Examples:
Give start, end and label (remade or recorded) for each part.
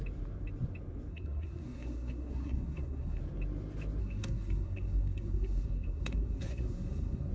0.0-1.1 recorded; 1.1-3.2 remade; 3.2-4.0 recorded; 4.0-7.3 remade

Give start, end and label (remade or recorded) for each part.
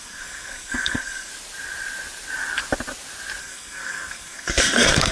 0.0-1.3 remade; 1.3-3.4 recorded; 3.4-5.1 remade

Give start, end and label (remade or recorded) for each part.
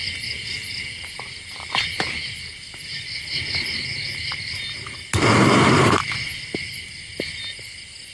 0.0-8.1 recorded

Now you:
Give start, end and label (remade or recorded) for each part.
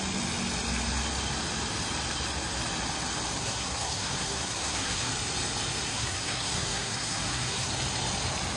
0.0-3.4 recorded; 3.4-5.1 remade; 5.1-5.9 recorded; 5.9-7.7 remade; 7.7-8.6 recorded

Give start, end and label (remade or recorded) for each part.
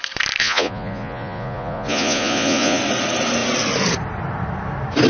0.0-0.4 recorded; 0.4-2.8 remade; 2.8-5.1 recorded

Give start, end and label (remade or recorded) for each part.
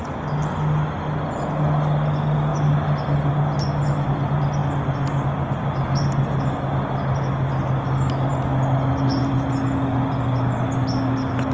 0.0-11.5 recorded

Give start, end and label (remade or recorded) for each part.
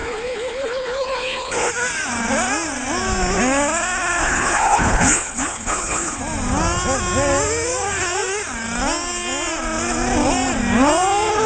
0.0-1.7 remade; 1.7-4.2 recorded; 4.2-6.2 remade; 6.2-11.5 recorded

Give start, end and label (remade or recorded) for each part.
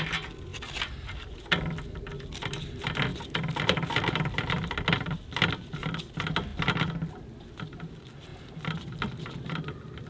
0.0-10.1 recorded